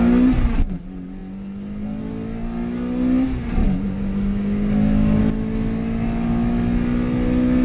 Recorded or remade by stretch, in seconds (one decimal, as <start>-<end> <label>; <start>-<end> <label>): 0.0-3.6 recorded; 3.6-5.2 remade; 5.2-7.6 recorded